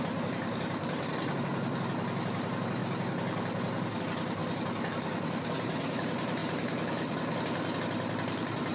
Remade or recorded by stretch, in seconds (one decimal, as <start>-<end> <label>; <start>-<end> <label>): 0.0-1.5 remade; 1.5-2.3 recorded; 2.3-2.8 remade; 2.8-4.0 recorded; 4.0-4.4 remade; 4.4-4.9 recorded; 4.9-6.4 remade; 6.4-7.8 recorded; 7.8-8.7 remade